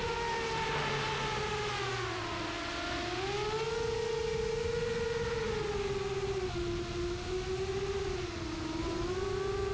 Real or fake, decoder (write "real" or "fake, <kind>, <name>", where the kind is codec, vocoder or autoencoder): real